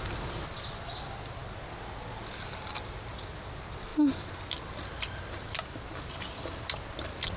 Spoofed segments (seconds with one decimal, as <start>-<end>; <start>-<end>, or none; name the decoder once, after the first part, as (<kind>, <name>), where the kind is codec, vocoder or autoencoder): 0.0-1.4 (vocoder, BigVGAN v2); 2.4-3.9; 4.6-7.4